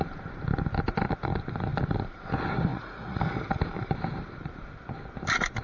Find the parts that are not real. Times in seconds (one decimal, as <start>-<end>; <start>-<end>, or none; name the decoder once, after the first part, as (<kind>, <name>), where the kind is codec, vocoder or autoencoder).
2.7-3.2 (vocoder, Vocos)